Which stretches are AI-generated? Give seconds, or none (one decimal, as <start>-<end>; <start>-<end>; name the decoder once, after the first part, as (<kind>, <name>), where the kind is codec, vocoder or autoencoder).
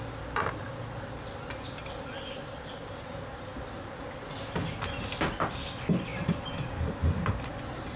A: none